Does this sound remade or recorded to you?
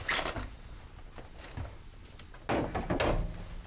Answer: recorded